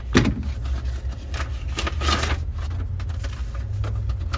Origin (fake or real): real